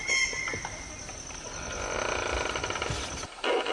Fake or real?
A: real